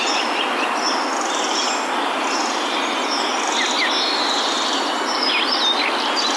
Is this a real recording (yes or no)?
yes